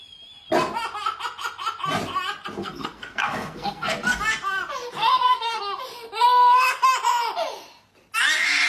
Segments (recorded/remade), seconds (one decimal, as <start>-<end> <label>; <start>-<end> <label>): 0.0-2.6 recorded; 2.6-4.2 remade; 4.2-5.0 recorded; 5.0-5.6 remade; 5.6-8.7 recorded